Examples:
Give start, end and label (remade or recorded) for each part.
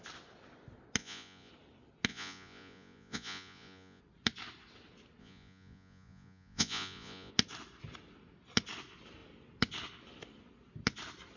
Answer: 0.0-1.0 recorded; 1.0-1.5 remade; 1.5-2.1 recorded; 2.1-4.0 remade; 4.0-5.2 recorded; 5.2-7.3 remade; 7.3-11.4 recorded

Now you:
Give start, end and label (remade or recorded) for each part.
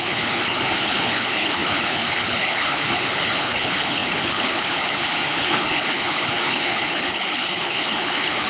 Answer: 0.0-8.5 remade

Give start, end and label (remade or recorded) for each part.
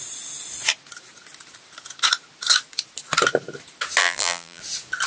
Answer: 0.0-4.0 recorded; 4.0-4.6 remade; 4.6-5.1 recorded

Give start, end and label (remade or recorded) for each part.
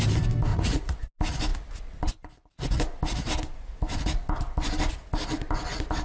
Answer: 0.0-0.5 recorded; 0.5-1.1 remade; 1.1-6.0 recorded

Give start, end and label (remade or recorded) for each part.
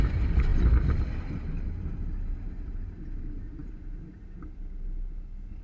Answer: 0.0-5.6 recorded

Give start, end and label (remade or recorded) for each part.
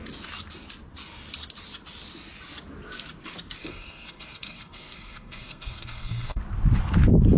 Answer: 0.0-3.6 recorded; 3.6-6.4 remade; 6.4-7.4 recorded